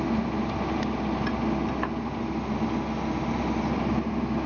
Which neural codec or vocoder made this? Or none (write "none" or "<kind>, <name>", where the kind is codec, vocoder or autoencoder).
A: none